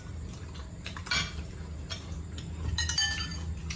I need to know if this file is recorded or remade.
recorded